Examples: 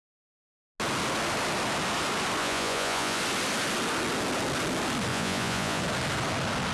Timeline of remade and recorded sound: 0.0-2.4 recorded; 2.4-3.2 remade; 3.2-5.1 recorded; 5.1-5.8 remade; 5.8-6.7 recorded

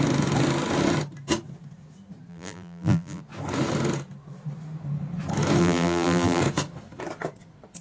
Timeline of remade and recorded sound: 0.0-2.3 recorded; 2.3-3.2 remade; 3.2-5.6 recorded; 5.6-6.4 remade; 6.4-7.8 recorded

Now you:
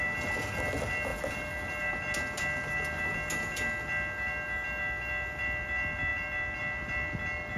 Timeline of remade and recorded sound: 0.0-7.6 recorded

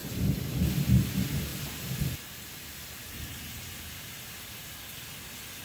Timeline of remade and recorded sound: 0.0-5.6 recorded